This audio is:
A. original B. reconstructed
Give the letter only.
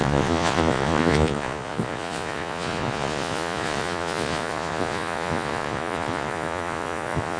B